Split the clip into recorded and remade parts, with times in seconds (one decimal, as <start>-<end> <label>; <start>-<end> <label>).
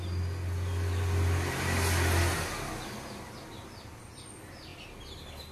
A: 0.0-5.5 recorded